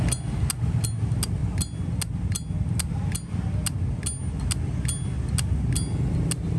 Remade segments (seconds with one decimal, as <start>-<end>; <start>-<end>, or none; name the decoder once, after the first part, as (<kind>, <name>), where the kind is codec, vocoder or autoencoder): none